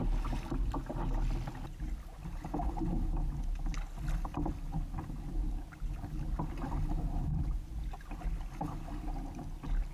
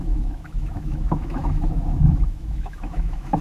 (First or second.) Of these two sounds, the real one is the first